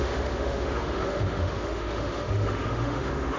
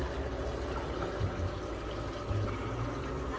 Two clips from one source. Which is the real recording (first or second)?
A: second